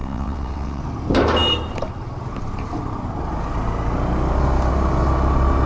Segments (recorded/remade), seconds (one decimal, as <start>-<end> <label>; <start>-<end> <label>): 0.0-0.8 remade; 0.8-5.7 recorded